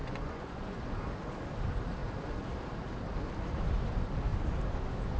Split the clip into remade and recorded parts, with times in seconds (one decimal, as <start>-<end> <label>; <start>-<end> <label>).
0.0-0.8 remade; 0.8-5.2 recorded